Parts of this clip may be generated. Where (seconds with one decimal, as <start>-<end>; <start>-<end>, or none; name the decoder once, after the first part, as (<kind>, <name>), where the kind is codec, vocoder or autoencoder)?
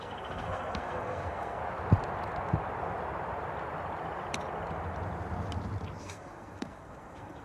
0.0-1.6 (codec, SNAC); 6.0-7.4